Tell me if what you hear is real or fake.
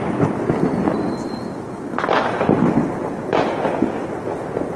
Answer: real